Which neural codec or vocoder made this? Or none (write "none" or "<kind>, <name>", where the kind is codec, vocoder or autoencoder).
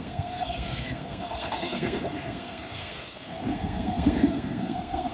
codec, SNAC